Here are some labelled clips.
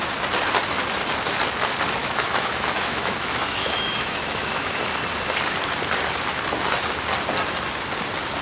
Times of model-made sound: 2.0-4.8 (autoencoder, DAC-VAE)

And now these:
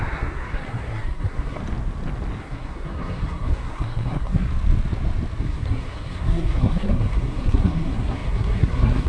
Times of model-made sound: 0.0-1.6 (codec, SNAC); 2.4-4.5; 5.4-9.1

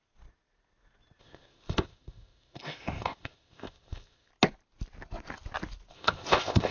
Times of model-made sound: 1.2-4.3 (codec, ZipCodec); 5.9-6.7

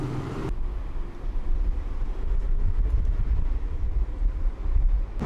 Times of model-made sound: 0.0-0.4 (vocoder, BigVGAN v2); 3.6-5.3

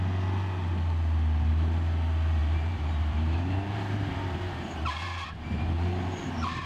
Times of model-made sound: 2.4-6.7 (vocoder, BigVGAN v2)

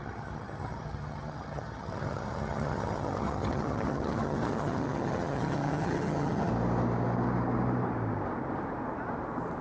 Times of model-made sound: 0.0-6.5 (vocoder, HiFi-GAN)

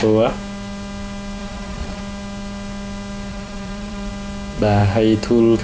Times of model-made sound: 1.4-2.0 (vocoder, Vocos); 3.3-4.1